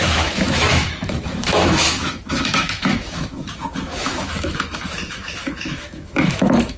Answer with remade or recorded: remade